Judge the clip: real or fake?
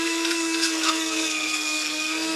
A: fake